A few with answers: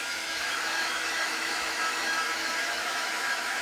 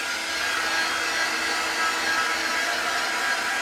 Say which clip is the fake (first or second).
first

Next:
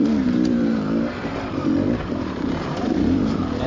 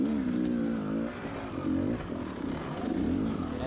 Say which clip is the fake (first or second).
first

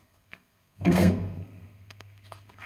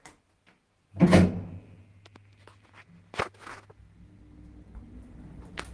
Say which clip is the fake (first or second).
first